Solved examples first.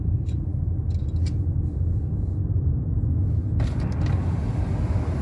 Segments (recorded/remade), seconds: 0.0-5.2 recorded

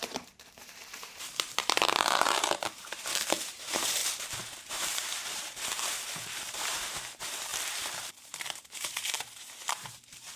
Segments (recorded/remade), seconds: 0.0-4.0 remade; 4.0-4.7 recorded; 4.7-7.5 remade; 7.5-8.1 recorded; 8.1-10.4 remade